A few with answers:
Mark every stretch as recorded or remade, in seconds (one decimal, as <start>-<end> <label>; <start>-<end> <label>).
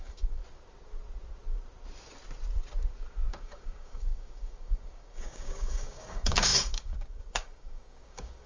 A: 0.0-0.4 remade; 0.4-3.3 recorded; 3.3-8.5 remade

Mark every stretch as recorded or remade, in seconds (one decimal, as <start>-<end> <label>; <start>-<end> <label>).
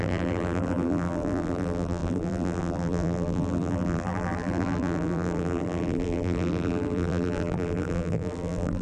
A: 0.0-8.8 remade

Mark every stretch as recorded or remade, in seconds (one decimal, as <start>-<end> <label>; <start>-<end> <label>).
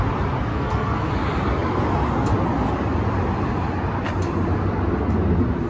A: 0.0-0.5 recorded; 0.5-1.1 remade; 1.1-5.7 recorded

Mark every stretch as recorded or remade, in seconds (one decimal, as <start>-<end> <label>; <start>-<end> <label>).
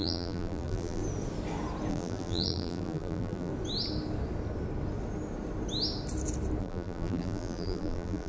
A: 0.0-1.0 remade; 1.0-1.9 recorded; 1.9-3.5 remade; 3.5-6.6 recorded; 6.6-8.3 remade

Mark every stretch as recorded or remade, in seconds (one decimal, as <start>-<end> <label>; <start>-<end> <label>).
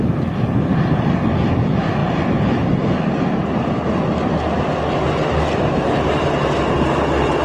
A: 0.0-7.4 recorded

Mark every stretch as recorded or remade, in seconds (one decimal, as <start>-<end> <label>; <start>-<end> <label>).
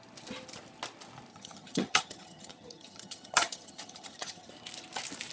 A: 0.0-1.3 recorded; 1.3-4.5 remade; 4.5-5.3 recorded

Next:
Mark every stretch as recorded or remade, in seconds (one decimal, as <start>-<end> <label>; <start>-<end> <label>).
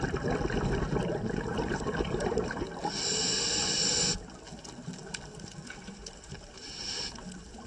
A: 0.0-1.1 recorded; 1.1-2.6 remade; 2.6-4.5 recorded; 4.5-7.7 remade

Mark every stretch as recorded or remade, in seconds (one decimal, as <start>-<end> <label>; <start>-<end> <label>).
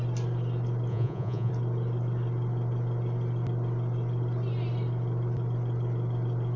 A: 0.0-0.9 recorded; 0.9-1.5 remade; 1.5-6.6 recorded